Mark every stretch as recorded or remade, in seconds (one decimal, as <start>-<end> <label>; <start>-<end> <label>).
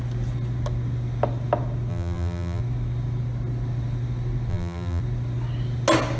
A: 0.0-1.9 recorded; 1.9-2.6 remade; 2.6-4.5 recorded; 4.5-5.0 remade; 5.0-6.2 recorded